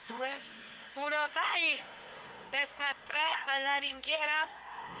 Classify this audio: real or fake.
fake